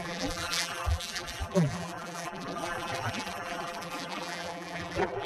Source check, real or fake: fake